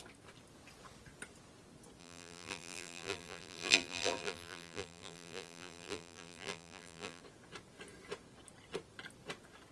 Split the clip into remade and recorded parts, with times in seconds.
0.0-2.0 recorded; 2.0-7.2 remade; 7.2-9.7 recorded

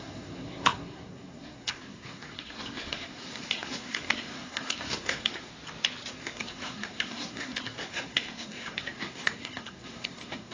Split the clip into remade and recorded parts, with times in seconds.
0.0-5.5 remade; 5.5-6.1 recorded; 6.1-10.5 remade

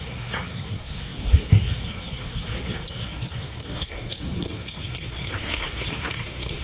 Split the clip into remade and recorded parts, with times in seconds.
0.0-6.6 remade

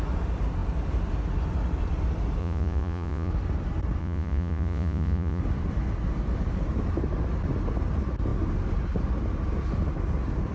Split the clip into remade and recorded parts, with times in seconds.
0.0-2.4 recorded; 2.4-3.3 remade; 3.3-4.0 recorded; 4.0-5.4 remade; 5.4-10.5 recorded

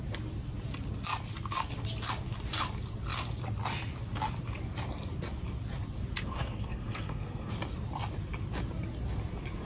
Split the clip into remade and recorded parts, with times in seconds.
0.0-6.2 recorded; 6.2-7.5 remade; 7.5-9.7 recorded

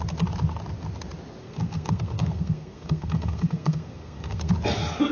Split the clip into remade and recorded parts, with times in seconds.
0.0-1.4 recorded; 1.4-4.5 remade; 4.5-5.1 recorded

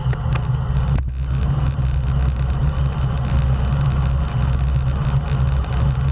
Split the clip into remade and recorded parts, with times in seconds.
0.0-6.1 recorded